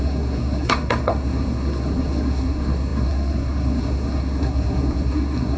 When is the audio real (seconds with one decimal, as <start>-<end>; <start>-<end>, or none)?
none